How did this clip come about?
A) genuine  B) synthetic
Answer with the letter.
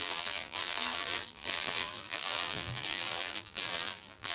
B